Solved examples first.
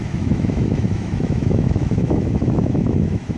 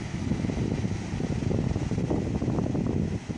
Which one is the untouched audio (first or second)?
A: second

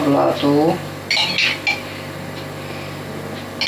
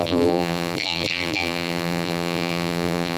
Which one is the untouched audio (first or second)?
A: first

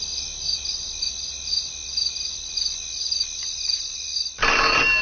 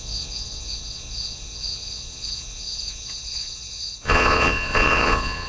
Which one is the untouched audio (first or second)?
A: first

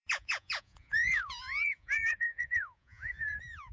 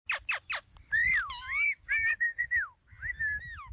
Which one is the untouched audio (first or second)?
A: second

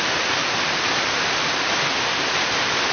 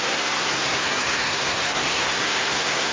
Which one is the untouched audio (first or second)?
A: first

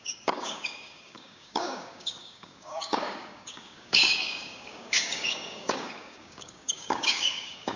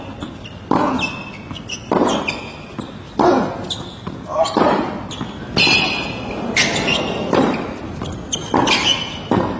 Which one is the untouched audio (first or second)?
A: second